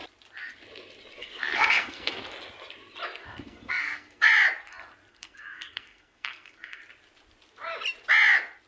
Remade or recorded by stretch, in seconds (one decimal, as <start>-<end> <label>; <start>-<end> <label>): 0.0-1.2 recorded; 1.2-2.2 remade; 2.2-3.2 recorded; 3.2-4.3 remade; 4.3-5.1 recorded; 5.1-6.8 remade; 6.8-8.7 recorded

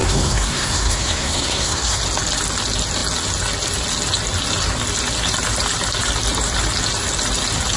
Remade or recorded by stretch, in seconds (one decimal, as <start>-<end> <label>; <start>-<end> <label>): 0.0-2.0 remade; 2.0-7.8 recorded

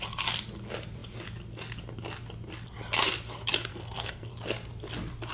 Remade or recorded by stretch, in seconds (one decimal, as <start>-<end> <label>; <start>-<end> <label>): 0.0-3.7 recorded; 3.7-4.3 remade; 4.3-5.3 recorded

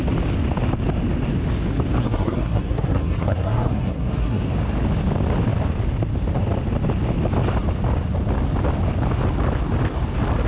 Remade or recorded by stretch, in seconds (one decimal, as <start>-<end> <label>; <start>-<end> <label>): 0.0-2.0 recorded; 2.0-4.4 remade; 4.4-10.5 recorded